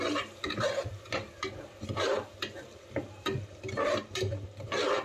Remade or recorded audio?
remade